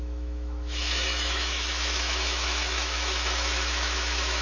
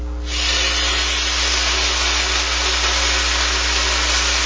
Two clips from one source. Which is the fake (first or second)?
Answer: first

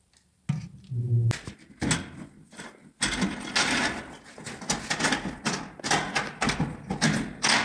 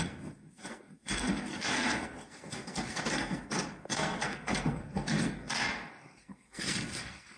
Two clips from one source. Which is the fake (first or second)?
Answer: second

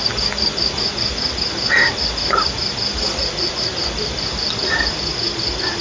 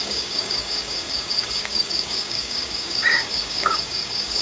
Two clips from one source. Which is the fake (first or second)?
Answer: second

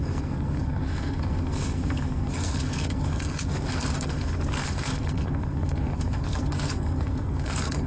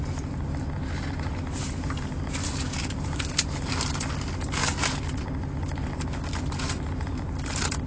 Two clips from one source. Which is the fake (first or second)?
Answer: first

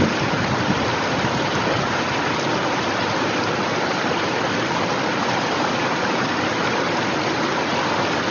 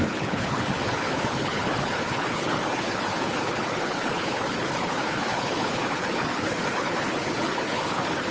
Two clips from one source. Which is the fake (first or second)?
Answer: second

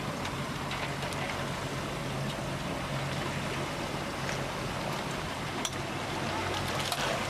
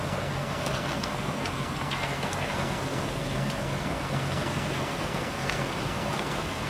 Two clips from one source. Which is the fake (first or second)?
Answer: second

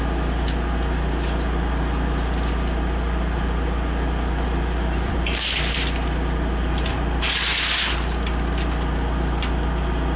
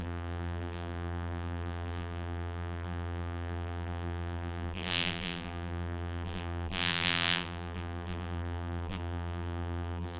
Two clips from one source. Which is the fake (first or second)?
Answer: second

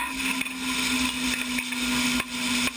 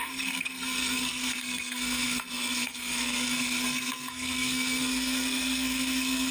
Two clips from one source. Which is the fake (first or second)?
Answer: second